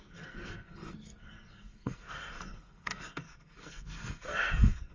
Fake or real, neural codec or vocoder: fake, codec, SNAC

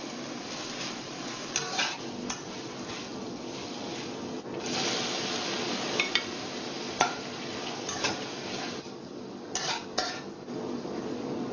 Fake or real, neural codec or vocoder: real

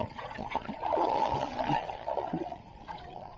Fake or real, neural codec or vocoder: fake, vocoder, Vocos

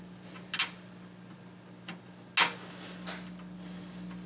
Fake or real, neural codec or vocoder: real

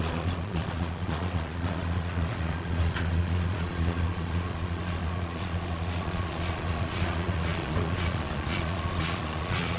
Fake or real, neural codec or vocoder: fake, vocoder, Vocos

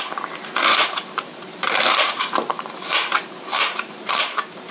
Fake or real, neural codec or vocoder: fake, vocoder, BigVGAN v2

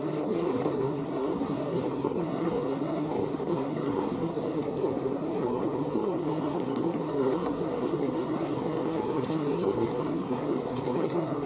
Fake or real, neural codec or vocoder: fake, codec, SNAC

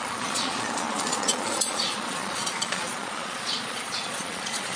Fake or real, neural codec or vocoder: fake, vocoder, Vocos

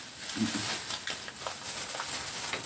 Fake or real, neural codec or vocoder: real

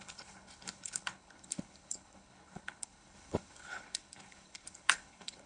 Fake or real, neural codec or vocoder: fake, codec, HILCodec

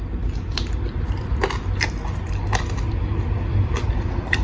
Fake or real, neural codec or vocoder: fake, vocoder, BigVGAN v2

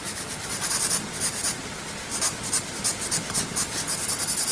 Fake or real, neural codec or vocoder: real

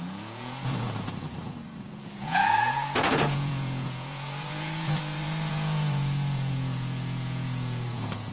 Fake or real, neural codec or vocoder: fake, vocoder, Vocos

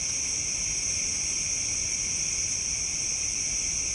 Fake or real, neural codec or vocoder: fake, vocoder, BigVGAN v2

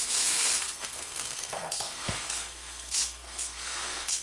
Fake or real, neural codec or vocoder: fake, codec, SNAC